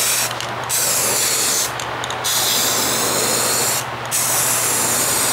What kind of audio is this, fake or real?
real